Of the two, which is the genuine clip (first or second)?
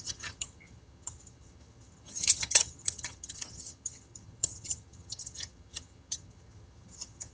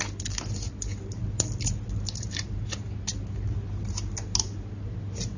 second